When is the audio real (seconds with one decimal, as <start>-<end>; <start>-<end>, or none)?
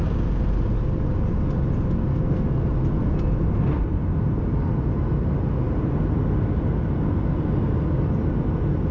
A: 0.0-2.1; 2.7-8.9